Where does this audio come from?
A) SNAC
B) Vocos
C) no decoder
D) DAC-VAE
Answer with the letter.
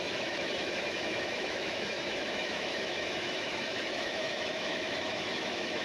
D